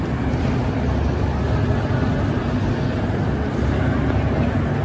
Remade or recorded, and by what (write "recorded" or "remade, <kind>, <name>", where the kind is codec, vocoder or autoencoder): recorded